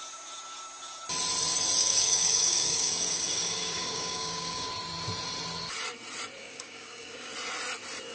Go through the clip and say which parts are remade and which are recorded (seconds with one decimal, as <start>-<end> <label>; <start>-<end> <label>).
0.0-1.8 recorded; 1.8-4.7 remade; 4.7-6.4 recorded; 6.4-7.3 remade; 7.3-8.1 recorded

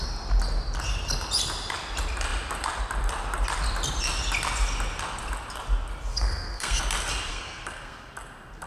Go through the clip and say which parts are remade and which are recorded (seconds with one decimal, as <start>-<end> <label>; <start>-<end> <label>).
0.0-6.1 recorded; 6.1-6.8 remade; 6.8-7.3 recorded; 7.3-8.1 remade; 8.1-8.7 recorded

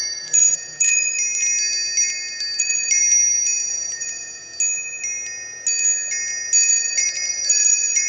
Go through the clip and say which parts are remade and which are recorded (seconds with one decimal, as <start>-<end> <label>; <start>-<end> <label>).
0.0-1.1 remade; 1.1-2.6 recorded; 2.6-3.0 remade; 3.0-3.7 recorded; 3.7-4.4 remade; 4.4-6.7 recorded; 6.7-8.1 remade

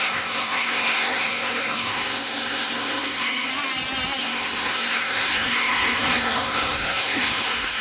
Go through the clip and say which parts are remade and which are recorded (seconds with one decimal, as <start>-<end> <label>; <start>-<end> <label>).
0.0-3.5 remade; 3.5-4.2 recorded; 4.2-7.8 remade